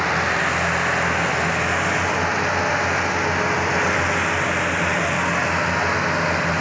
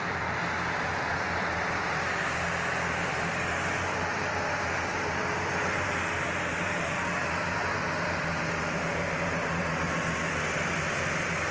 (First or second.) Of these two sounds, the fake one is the second